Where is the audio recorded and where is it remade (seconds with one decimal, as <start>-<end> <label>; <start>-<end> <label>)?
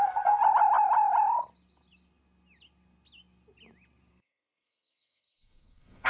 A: 0.0-0.4 remade; 0.4-4.1 recorded; 4.1-6.1 remade